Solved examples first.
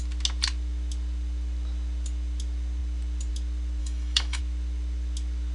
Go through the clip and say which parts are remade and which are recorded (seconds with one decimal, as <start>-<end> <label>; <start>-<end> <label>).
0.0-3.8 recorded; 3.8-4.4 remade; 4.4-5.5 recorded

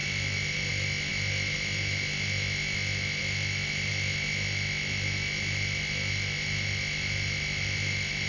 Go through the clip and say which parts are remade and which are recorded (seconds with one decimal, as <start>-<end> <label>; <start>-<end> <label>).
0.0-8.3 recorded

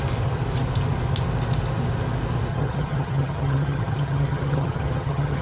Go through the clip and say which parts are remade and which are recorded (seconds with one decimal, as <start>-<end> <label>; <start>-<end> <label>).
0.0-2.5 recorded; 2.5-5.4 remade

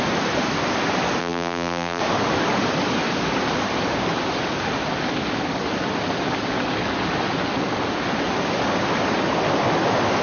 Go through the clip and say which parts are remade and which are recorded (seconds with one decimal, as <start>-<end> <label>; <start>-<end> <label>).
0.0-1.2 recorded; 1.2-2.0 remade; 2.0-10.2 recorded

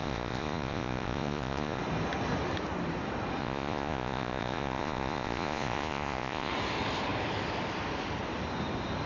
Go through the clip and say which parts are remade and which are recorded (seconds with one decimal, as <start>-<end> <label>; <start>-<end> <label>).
0.0-1.8 remade; 1.8-3.4 recorded; 3.4-6.5 remade; 6.5-9.1 recorded

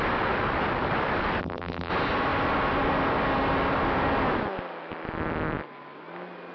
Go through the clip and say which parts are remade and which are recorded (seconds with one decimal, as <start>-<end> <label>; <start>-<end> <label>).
0.0-1.4 recorded; 1.4-1.9 remade; 1.9-6.5 recorded

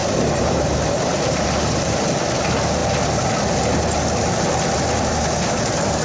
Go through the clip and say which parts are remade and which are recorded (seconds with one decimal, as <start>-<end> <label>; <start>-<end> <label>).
0.0-2.2 remade; 2.2-6.0 recorded